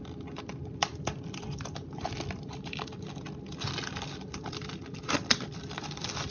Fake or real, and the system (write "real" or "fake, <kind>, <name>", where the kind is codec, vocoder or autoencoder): real